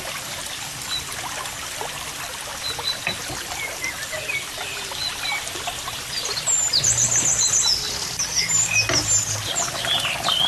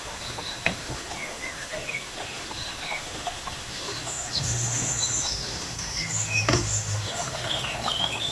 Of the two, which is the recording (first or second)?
first